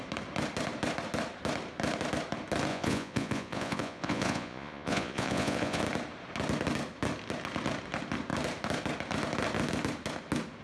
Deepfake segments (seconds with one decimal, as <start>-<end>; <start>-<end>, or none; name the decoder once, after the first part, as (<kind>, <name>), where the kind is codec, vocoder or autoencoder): 2.7-5.8 (vocoder, Vocos)